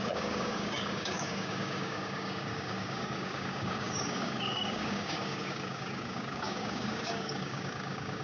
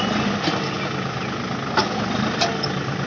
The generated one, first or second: first